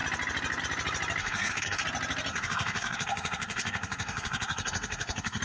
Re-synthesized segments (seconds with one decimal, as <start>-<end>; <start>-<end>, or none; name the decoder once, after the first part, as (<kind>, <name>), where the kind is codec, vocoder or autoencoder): 1.2-1.8 (codec, SNAC); 2.3-5.4

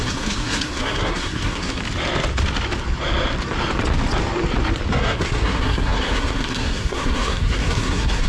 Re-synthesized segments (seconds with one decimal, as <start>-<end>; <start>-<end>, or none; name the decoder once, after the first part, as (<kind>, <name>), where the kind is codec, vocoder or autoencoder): 0.0-1.8 (codec, SNAC); 4.9-8.3

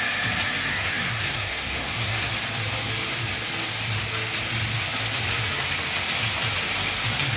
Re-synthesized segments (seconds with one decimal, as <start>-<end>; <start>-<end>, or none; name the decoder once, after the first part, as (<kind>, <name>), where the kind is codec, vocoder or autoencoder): 0.7-2.3 (codec, SNAC)

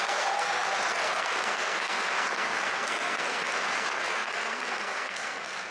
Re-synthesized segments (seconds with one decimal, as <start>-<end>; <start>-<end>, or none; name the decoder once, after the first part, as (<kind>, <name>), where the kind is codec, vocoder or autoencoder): 0.0-5.7 (codec, SNAC)